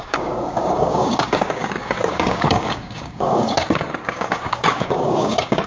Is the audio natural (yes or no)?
no